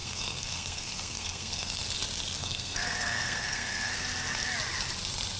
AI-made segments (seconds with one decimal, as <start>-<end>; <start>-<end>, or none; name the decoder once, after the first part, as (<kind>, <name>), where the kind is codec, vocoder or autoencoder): 0.0-1.8 (codec, SNAC); 2.4-4.0